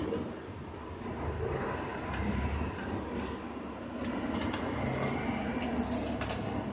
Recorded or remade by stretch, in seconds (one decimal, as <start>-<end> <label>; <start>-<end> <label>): 0.0-6.7 recorded